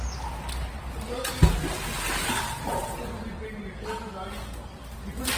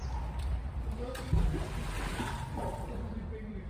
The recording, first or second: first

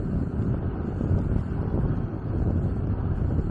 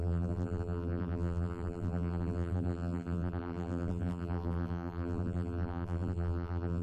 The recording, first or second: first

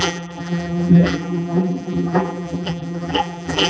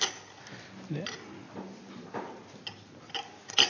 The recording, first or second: second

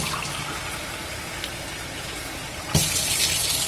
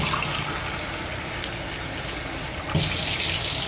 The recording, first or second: second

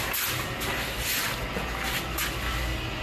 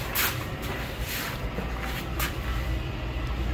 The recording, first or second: first